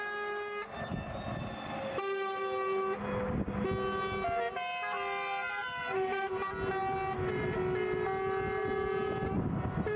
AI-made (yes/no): no